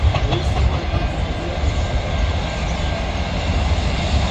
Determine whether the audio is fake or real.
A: real